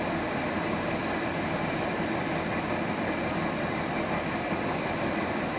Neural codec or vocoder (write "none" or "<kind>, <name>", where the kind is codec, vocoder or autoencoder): none